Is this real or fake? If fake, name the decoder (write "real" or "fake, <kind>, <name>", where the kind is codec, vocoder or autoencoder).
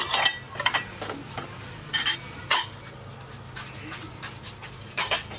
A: real